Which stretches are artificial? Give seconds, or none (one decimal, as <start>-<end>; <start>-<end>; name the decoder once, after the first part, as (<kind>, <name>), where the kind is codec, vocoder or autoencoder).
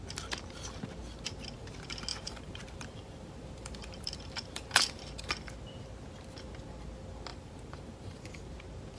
2.1-5.0 (vocoder, BigVGAN v2); 7.3-8.5